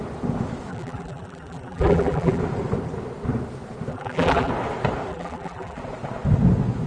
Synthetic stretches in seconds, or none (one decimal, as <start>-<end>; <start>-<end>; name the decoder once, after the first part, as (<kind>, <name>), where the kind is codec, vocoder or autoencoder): 0.7-2.4 (vocoder, BigVGAN v2); 3.9-4.5; 5.1-5.8